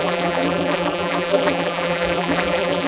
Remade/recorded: remade